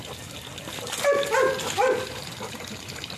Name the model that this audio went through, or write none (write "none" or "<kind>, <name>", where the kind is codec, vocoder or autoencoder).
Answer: none